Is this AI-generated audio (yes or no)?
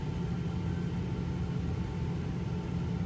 no